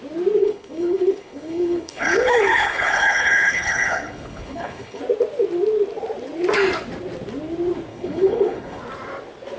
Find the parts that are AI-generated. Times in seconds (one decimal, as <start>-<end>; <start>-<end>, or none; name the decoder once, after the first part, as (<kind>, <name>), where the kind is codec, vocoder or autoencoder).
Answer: 0.4-5.0 (codec, HILCodec); 7.9-8.8